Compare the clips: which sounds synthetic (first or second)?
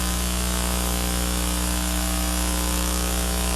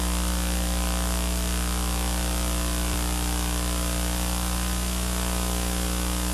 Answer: first